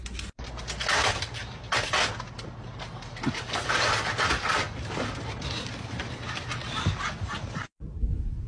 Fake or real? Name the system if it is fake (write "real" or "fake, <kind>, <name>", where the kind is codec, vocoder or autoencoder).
real